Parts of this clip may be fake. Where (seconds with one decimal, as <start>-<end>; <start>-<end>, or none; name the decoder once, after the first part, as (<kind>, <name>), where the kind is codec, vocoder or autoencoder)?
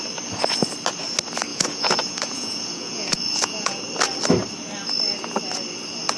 1.5-3.8 (vocoder, Vocos)